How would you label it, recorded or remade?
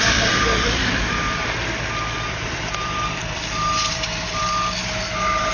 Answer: remade